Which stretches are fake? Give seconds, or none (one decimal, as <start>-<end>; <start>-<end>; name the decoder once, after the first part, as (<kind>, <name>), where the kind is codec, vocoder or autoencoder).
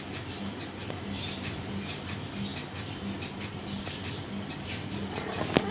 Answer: 0.8-1.6 (vocoder, BigVGAN v2); 2.5-4.0